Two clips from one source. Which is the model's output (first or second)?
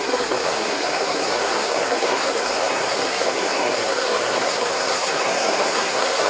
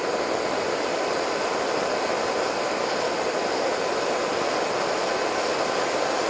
first